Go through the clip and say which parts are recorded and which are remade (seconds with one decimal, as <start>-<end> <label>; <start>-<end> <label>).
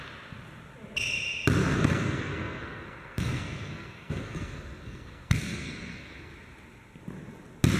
0.0-1.6 recorded; 1.6-6.3 remade; 6.3-7.8 recorded